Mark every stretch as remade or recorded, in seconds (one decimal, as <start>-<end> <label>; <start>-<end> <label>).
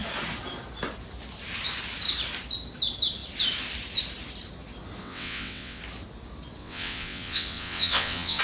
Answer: 0.0-5.0 recorded; 5.0-5.8 remade; 5.8-6.6 recorded; 6.6-8.4 remade